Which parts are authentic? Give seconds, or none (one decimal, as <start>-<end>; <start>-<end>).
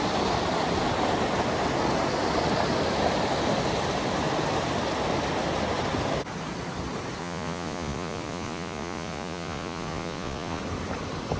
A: 0.0-7.2; 10.6-11.4